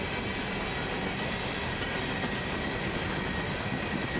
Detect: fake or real real